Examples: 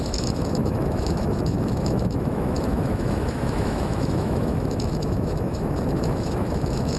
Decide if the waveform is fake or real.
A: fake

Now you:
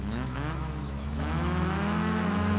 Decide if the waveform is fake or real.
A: fake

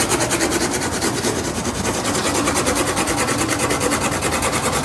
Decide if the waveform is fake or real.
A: real